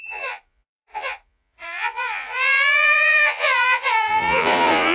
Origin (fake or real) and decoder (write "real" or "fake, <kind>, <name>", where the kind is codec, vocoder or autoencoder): fake, vocoder, Vocos